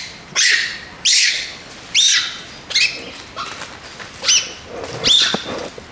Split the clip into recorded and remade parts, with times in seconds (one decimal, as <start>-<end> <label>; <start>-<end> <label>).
0.0-1.2 recorded; 1.2-1.7 remade; 1.7-5.9 recorded